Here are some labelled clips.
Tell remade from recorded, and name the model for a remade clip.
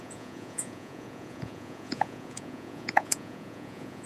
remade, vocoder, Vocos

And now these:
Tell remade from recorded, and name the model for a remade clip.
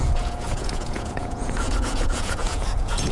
remade, vocoder, Vocos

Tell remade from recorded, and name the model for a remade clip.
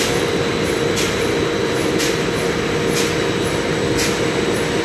recorded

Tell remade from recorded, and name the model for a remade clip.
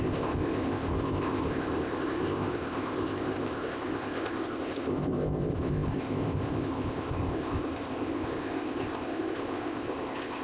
remade, codec, ZipCodec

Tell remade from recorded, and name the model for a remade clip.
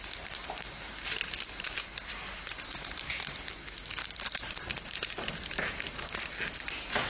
recorded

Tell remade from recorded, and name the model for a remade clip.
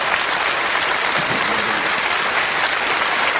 recorded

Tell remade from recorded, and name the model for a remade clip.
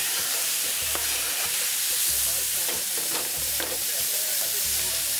remade, vocoder, BigVGAN v2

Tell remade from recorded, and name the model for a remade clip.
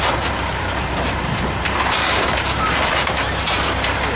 remade, vocoder, BigVGAN v2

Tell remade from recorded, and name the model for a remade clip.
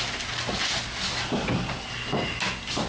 recorded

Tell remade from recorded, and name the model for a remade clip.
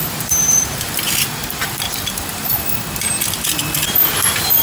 remade, vocoder, BigVGAN v2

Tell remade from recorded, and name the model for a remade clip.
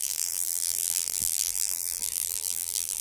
remade, vocoder, BigVGAN v2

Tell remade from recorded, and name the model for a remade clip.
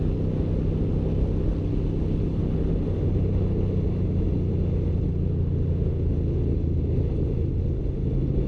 recorded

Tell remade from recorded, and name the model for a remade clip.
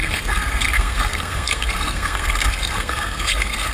remade, codec, SNAC